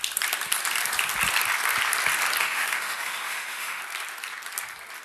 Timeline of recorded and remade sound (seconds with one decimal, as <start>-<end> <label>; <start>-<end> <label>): 0.0-2.4 recorded; 2.4-3.8 remade; 3.8-5.0 recorded